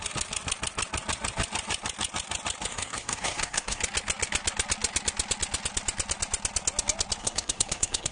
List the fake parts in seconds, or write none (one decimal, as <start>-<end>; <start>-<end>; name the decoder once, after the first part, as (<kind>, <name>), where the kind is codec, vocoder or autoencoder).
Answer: 2.7-3.8 (codec, SNAC); 7.2-8.1